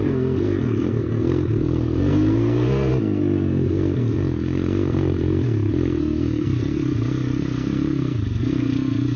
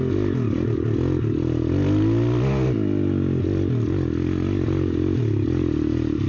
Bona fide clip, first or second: second